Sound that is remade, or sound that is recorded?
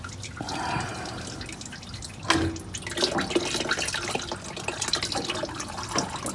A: recorded